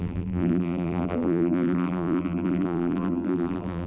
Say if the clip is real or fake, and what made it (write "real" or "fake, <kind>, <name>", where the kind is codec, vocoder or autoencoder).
fake, vocoder, BigVGAN v2